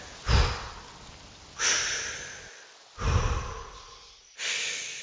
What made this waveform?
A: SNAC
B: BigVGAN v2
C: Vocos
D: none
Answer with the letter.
D